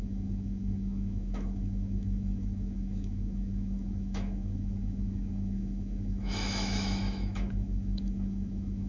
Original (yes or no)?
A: no